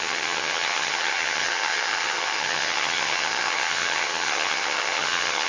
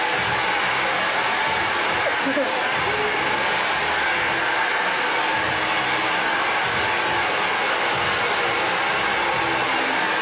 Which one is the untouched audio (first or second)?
second